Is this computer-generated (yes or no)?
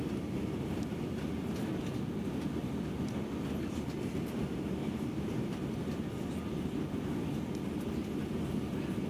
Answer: no